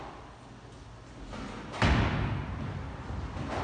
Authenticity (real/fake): real